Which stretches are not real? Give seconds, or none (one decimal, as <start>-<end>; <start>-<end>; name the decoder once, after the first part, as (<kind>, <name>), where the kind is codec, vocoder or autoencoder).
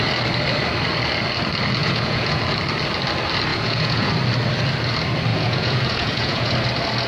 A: 1.8-2.4 (vocoder, Vocos); 3.5-4.1; 5.3-6.5